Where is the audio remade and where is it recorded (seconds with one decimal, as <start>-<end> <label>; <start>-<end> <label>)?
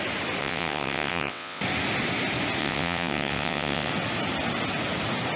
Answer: 0.0-0.4 recorded; 0.4-1.6 remade; 1.6-2.6 recorded; 2.6-3.9 remade; 3.9-5.4 recorded